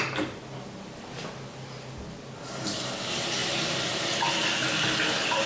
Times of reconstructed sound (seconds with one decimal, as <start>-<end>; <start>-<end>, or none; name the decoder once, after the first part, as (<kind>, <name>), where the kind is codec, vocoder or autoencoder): 3.4-4.3 (vocoder, BigVGAN v2)